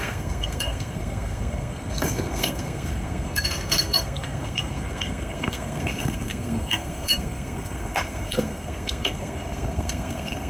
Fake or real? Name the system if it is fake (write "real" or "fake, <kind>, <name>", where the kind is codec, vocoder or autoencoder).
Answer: fake, codec, SNAC